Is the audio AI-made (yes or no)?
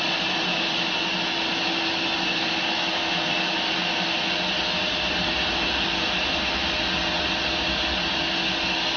no